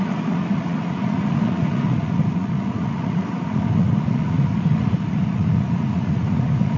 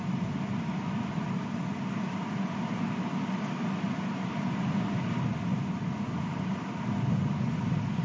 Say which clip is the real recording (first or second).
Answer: second